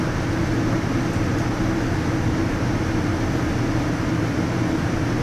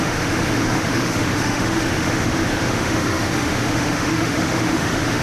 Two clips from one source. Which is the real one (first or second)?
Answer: first